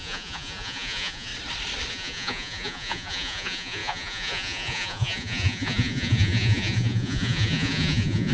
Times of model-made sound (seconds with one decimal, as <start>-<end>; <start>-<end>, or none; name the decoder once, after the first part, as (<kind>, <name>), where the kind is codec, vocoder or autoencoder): 0.0-1.3 (vocoder, Vocos); 1.9-8.3